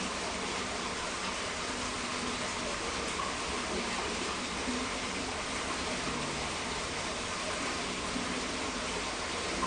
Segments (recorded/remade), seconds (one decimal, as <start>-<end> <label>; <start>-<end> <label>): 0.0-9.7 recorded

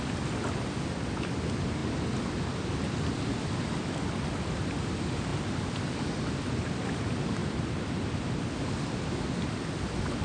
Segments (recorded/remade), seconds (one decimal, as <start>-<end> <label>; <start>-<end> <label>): 0.0-1.8 recorded; 1.8-3.5 remade; 3.5-7.4 recorded; 7.4-8.4 remade; 8.4-10.2 recorded

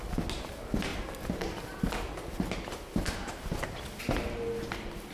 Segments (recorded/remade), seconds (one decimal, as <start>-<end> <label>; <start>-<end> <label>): 0.0-5.1 recorded

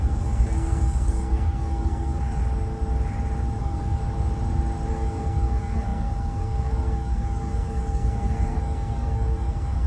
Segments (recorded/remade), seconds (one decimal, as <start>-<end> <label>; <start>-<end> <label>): 0.0-2.4 remade; 2.4-3.6 recorded; 3.6-4.0 remade; 4.0-4.9 recorded; 4.9-9.9 remade

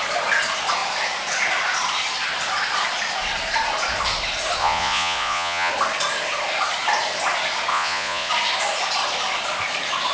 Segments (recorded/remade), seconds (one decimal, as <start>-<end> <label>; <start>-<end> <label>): 0.0-4.6 recorded; 4.6-5.7 remade; 5.7-7.7 recorded; 7.7-8.3 remade; 8.3-10.1 recorded

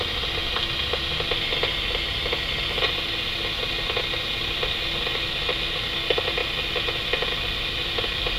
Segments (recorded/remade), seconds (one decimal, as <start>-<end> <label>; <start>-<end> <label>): 0.0-8.4 recorded

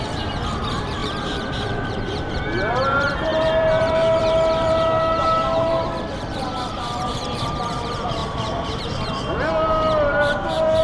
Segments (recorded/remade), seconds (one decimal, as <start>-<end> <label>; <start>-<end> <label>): 0.0-8.2 remade; 8.2-8.8 recorded; 8.8-9.5 remade; 9.5-10.8 recorded

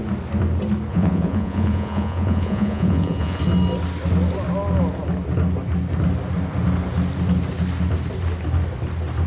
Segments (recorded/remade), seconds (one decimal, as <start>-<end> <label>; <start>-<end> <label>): 0.0-0.9 recorded; 0.9-3.4 remade; 3.4-9.3 recorded